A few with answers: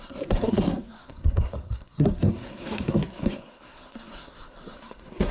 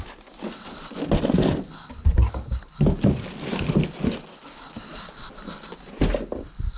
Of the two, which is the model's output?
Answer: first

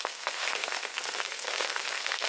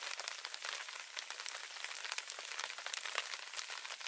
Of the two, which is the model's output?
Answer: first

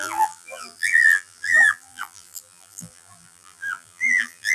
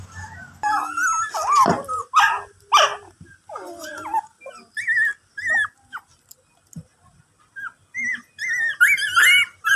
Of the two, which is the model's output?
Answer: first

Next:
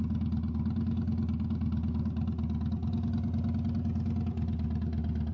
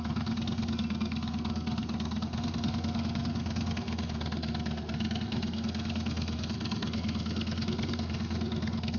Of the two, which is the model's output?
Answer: second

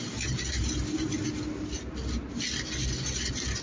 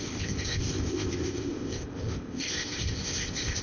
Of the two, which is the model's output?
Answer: second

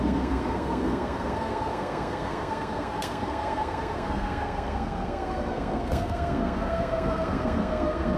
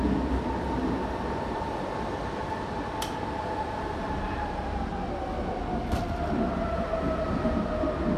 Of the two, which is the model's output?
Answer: first